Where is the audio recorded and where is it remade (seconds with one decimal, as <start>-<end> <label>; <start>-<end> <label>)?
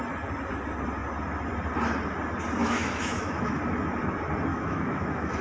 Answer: 0.0-2.6 recorded; 2.6-3.6 remade; 3.6-4.5 recorded; 4.5-5.4 remade